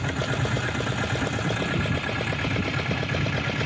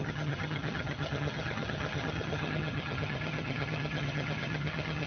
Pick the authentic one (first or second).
first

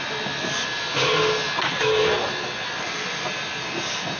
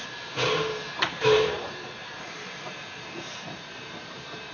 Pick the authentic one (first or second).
first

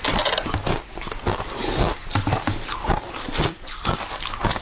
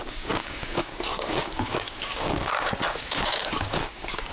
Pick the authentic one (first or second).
first